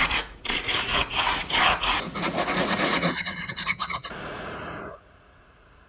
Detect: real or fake fake